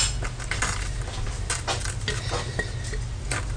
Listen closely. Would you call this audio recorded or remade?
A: recorded